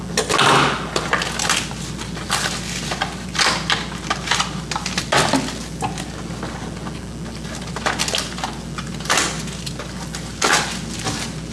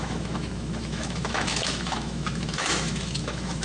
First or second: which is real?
first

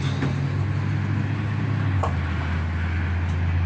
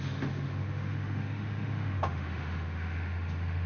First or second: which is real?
first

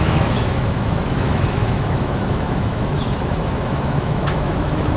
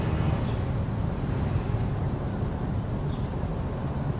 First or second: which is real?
second